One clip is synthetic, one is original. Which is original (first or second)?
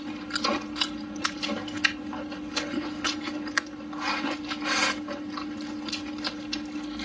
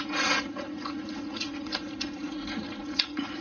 first